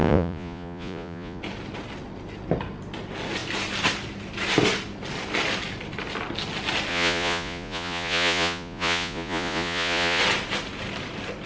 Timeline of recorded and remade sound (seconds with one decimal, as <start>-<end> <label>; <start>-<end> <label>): 0.0-1.4 remade; 1.4-6.9 recorded; 6.9-10.2 remade; 10.2-11.5 recorded